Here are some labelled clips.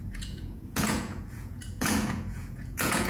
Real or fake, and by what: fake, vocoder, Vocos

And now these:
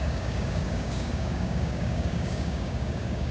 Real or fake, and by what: fake, codec, DAC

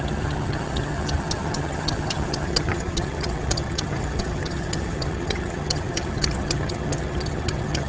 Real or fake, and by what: fake, vocoder, HiFi-GAN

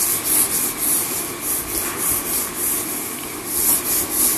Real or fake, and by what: real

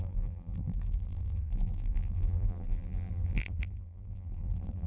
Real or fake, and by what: fake, vocoder, BigVGAN v2